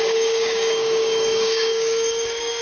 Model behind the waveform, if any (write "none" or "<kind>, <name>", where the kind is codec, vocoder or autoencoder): codec, DAC